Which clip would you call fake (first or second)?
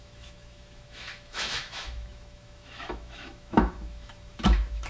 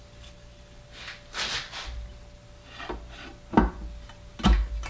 first